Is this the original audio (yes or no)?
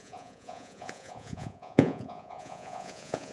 no